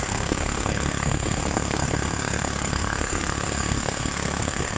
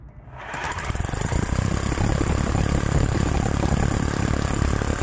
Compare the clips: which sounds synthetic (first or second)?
first